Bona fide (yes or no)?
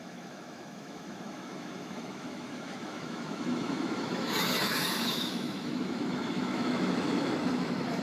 no